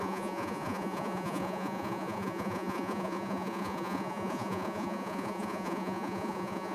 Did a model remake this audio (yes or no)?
yes